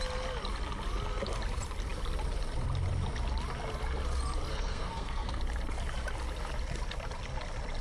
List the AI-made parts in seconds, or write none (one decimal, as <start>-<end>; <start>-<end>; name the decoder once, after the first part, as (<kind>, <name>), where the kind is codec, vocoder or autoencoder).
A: 4.5-5.4 (codec, SNAC)